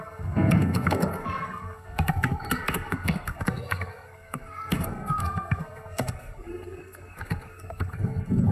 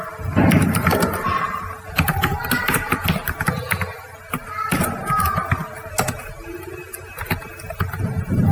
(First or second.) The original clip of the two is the second